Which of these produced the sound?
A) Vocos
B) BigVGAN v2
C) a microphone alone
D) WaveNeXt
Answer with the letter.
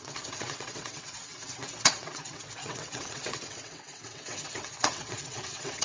D